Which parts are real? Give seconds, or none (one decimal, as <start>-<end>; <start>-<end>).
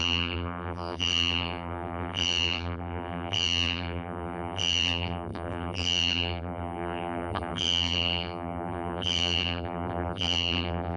none